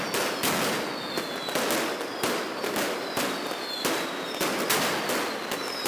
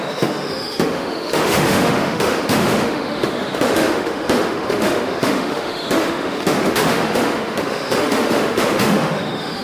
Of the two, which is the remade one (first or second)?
second